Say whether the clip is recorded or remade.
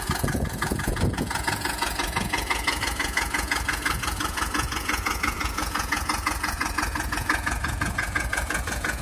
remade